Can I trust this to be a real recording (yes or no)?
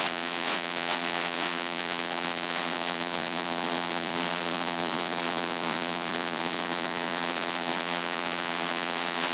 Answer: no